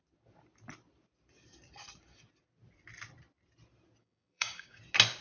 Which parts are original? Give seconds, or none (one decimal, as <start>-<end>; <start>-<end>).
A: 0.0-4.0; 4.8-5.2